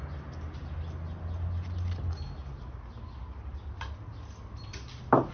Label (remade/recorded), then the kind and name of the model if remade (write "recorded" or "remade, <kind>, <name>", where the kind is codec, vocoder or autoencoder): recorded